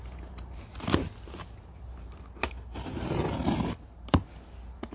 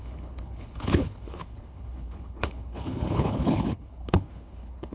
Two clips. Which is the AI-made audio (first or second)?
second